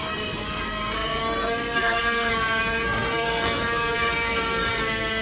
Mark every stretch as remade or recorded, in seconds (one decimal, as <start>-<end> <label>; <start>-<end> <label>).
0.0-5.2 remade